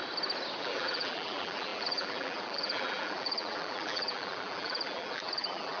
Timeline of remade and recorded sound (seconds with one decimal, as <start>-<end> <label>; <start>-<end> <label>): 0.0-0.6 recorded; 0.6-5.8 remade